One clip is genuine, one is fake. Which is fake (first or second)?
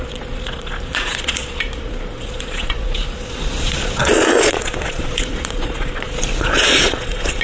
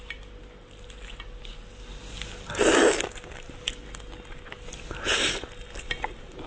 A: first